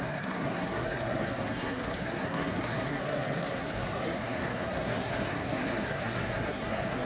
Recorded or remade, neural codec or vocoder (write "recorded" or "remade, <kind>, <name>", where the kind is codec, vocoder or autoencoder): remade, codec, SNAC